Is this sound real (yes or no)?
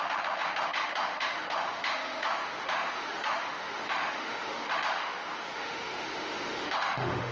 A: no